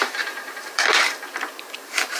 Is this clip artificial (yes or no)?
yes